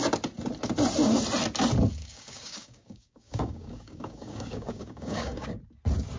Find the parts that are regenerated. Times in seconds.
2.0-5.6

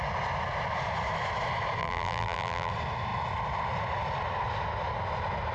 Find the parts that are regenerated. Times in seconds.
1.8-2.7

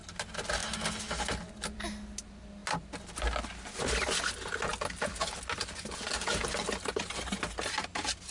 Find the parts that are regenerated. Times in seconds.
none

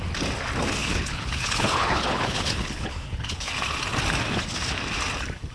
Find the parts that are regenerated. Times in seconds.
0.8-3.5

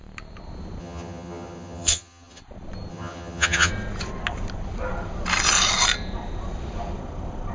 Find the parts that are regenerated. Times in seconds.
0.8-2.4; 2.9-3.7

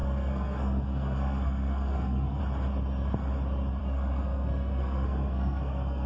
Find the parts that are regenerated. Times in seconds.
0.0-2.4; 3.8-6.1